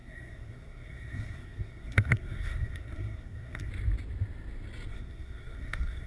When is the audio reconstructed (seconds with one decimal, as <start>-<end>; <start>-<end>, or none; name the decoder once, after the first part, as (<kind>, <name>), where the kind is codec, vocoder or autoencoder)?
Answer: 0.0-3.7 (codec, SNAC); 4.9-6.1